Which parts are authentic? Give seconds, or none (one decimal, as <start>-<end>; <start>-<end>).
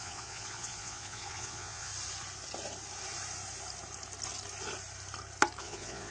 1.9-5.6